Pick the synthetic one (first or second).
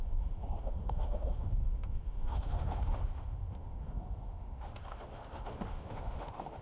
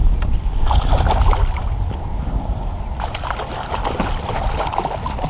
first